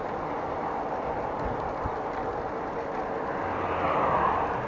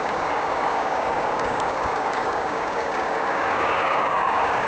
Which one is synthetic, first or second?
second